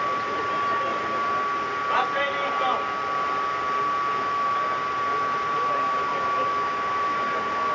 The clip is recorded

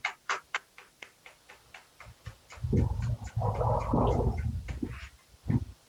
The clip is recorded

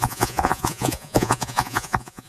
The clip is remade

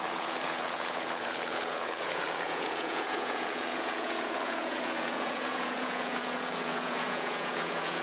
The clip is remade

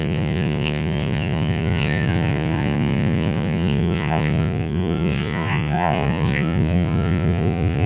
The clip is remade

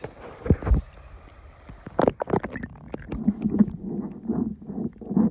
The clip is recorded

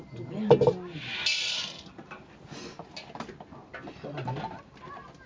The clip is recorded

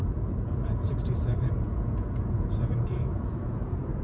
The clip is remade